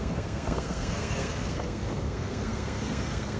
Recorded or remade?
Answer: remade